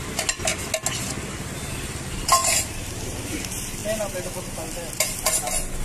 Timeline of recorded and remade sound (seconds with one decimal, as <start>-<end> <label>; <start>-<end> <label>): 0.0-5.8 recorded

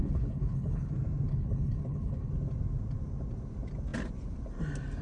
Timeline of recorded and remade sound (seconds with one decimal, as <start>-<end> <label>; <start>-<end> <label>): 0.0-0.9 remade; 0.9-1.3 recorded; 1.3-2.3 remade; 2.3-5.0 recorded

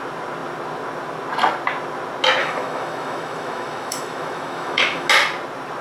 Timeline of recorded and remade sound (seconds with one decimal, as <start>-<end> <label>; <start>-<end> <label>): 0.0-2.4 recorded; 2.4-5.1 remade; 5.1-5.8 recorded